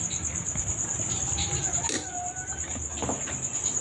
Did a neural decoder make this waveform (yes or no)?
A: no